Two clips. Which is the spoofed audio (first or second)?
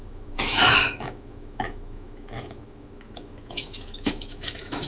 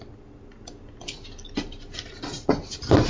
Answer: first